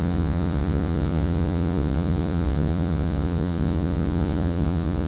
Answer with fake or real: fake